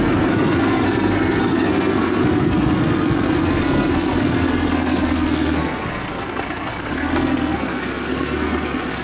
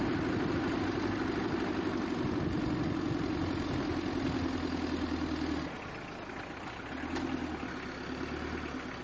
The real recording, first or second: second